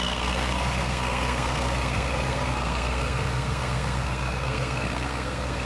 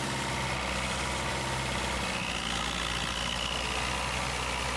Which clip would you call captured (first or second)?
second